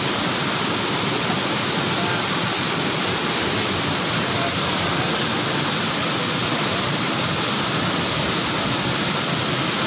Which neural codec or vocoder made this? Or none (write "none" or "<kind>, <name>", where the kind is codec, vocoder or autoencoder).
none